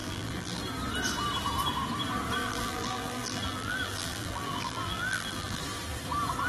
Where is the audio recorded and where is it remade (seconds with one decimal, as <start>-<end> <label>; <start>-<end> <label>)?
0.0-0.6 remade; 0.6-2.4 recorded; 2.4-5.6 remade; 5.6-6.5 recorded